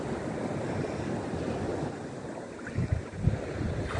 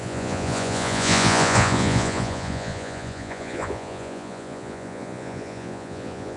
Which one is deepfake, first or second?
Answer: second